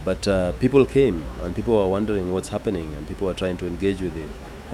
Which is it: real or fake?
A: fake